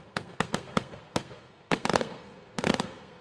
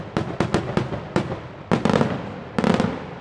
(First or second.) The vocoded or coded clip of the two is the first